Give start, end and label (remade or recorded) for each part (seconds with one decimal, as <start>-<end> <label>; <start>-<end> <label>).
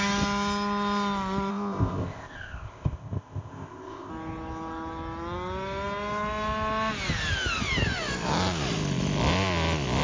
0.0-1.5 recorded; 1.5-4.1 remade; 4.1-10.0 recorded